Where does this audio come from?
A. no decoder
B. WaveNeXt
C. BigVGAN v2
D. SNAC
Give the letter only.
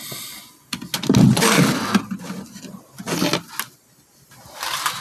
A